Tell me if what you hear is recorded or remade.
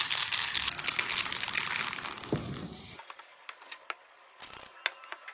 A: recorded